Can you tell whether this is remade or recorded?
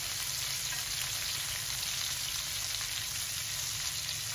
recorded